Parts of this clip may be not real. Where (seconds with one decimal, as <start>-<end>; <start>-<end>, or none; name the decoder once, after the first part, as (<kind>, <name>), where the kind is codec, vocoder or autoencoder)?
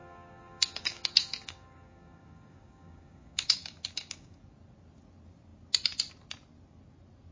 0.0-4.4 (codec, DAC)